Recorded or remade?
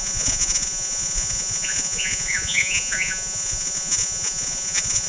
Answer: remade